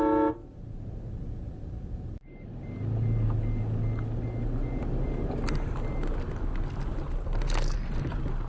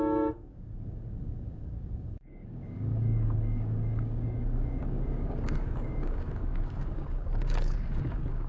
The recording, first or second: first